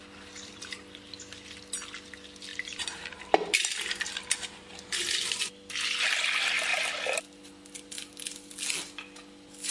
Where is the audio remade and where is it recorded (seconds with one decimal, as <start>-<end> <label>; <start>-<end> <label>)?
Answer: 0.0-2.5 recorded; 2.5-3.2 remade; 3.2-9.7 recorded

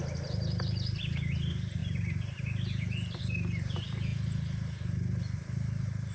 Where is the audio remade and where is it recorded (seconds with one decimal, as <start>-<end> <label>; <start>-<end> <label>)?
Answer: 0.0-6.1 recorded

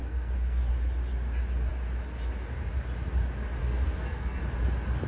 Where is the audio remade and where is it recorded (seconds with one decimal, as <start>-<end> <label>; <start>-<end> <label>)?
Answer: 0.0-0.7 remade; 0.7-3.6 recorded; 3.6-4.4 remade; 4.4-5.1 recorded

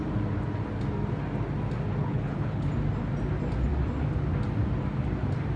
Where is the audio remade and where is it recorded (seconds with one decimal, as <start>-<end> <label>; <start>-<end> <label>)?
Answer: 0.0-2.0 recorded; 2.0-2.7 remade; 2.7-5.6 recorded

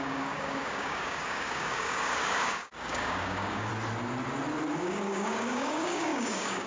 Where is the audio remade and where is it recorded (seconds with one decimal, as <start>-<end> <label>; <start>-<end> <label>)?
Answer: 0.0-3.7 remade; 3.7-4.8 recorded; 4.8-6.7 remade

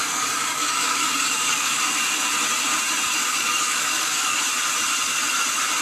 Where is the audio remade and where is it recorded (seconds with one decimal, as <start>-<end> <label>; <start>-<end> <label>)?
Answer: 0.0-1.8 remade; 1.8-3.2 recorded; 3.2-4.4 remade; 4.4-5.8 recorded

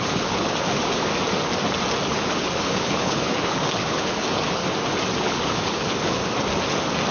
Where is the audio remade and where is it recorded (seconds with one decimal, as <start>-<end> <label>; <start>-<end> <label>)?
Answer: 0.0-1.1 remade; 1.1-2.1 recorded; 2.1-4.6 remade; 4.6-5.2 recorded; 5.2-6.2 remade; 6.2-7.1 recorded

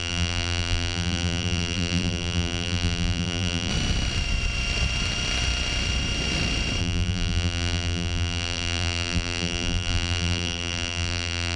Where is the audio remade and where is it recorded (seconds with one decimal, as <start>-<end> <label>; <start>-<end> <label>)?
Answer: 0.0-3.7 remade; 3.7-6.8 recorded; 6.8-11.6 remade